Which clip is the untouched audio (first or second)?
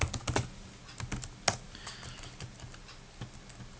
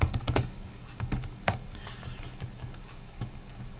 first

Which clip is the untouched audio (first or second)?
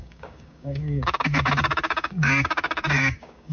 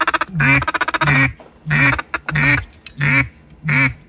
second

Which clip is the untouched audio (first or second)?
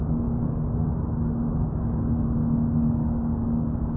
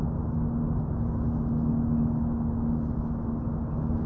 second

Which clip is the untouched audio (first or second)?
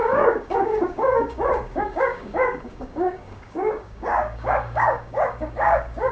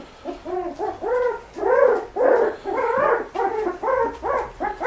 second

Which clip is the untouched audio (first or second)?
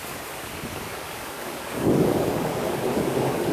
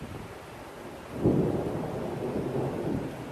second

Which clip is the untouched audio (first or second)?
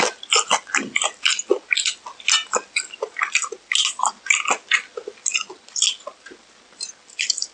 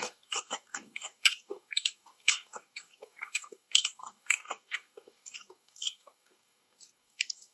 first